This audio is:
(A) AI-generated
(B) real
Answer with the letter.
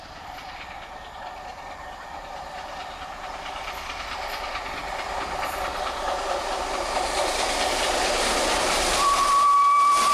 A